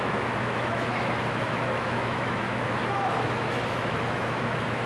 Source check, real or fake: fake